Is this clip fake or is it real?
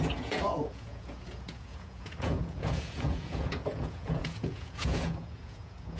fake